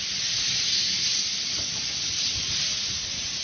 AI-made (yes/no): no